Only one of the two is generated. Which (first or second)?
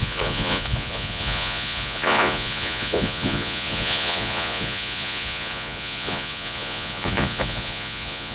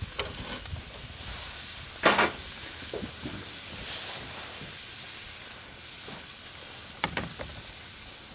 first